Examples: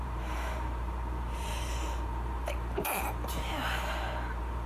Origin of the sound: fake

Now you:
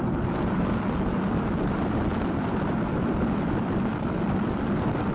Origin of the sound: real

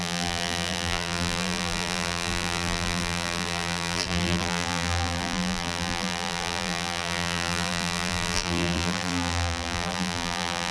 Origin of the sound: fake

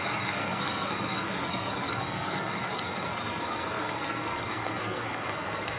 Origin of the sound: fake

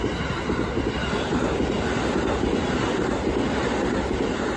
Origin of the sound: real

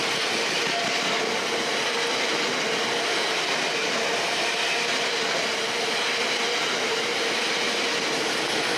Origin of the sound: real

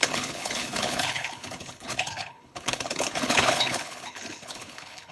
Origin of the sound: fake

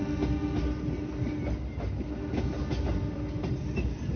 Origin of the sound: real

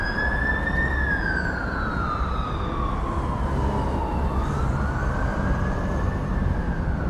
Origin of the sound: real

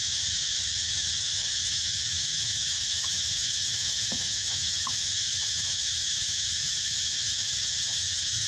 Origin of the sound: fake